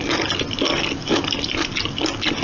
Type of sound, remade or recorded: recorded